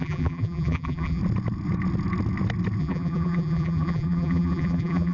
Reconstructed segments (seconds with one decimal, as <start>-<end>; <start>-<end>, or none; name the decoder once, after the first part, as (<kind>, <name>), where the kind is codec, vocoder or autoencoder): 0.0-1.2 (vocoder, BigVGAN v2); 2.8-5.1